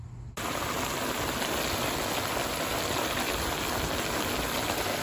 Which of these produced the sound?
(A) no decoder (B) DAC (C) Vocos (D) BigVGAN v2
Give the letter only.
A